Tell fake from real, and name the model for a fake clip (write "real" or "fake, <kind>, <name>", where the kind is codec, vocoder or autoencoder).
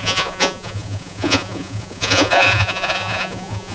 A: fake, vocoder, Vocos